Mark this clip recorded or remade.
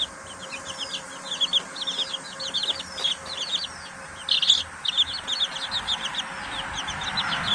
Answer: recorded